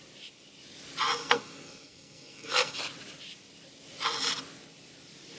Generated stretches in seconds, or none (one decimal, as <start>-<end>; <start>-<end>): 1.2-2.8